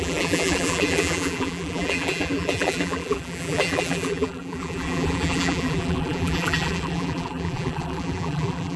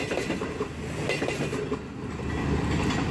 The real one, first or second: second